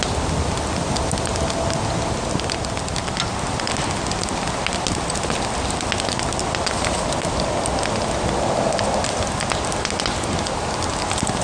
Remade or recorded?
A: recorded